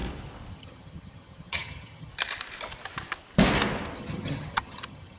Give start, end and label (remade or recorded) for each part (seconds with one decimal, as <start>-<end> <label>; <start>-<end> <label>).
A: 0.0-0.5 recorded; 0.5-2.1 remade; 2.1-4.0 recorded; 4.0-5.2 remade